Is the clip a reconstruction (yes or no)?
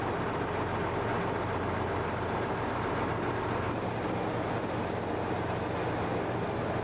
no